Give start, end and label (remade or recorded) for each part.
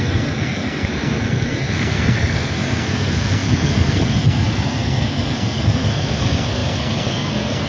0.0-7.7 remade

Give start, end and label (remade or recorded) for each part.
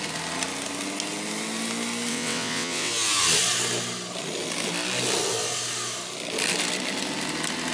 0.0-2.1 recorded; 2.1-2.9 remade; 2.9-7.7 recorded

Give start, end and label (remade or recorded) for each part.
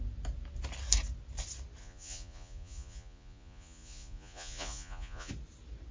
0.0-1.8 recorded; 1.8-5.3 remade; 5.3-5.9 recorded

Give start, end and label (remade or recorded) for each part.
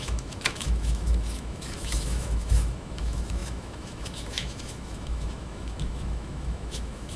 0.0-7.2 remade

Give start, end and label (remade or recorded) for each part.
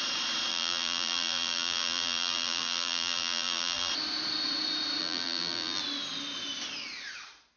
0.0-0.5 recorded; 0.5-3.9 remade; 3.9-5.0 recorded; 5.0-5.8 remade; 5.8-7.6 recorded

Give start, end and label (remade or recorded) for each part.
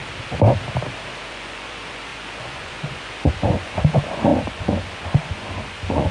0.0-1.3 recorded; 1.3-6.1 remade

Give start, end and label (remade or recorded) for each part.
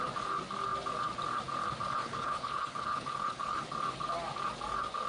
0.0-2.0 recorded; 2.0-3.6 remade; 3.6-5.1 recorded